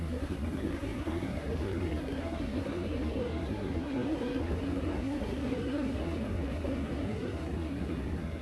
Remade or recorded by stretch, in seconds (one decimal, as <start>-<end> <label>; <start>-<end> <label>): 0.0-8.4 remade